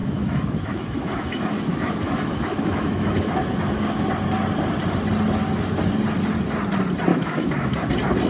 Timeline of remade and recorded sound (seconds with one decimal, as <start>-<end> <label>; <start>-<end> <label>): 0.0-4.1 remade; 4.1-7.1 recorded; 7.1-7.9 remade; 7.9-8.3 recorded